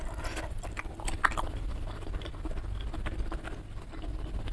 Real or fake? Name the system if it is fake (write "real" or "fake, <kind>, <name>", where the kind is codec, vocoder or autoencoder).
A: real